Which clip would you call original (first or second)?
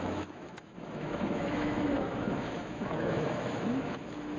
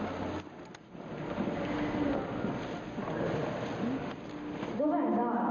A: second